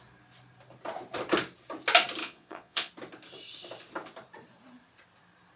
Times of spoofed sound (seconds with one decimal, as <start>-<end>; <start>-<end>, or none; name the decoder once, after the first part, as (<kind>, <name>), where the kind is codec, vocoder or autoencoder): 2.2-2.9 (vocoder, Vocos)